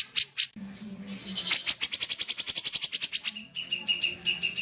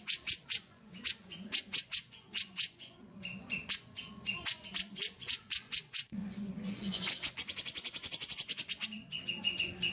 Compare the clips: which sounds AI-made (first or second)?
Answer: second